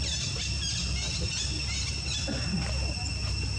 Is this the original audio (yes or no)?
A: yes